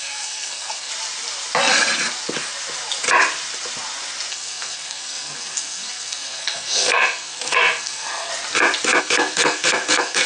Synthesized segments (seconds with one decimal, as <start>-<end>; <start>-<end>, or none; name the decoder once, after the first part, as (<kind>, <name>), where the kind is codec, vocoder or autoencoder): 0.0-0.9 (codec, SNAC); 4.3-8.3; 9.0-10.3